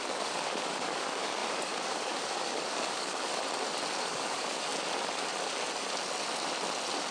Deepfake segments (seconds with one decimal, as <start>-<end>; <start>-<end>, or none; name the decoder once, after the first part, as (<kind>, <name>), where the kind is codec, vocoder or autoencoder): 0.0-3.3 (codec, DAC); 4.1-4.7